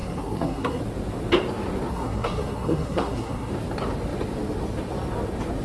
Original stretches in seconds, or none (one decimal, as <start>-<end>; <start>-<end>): 0.8-1.9; 3.5-5.6